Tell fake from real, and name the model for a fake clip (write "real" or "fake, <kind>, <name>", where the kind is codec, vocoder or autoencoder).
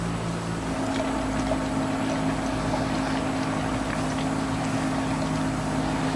real